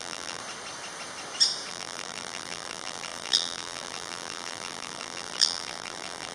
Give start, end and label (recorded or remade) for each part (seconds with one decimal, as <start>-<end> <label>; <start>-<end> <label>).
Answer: 0.0-0.4 remade; 0.4-1.7 recorded; 1.7-6.3 remade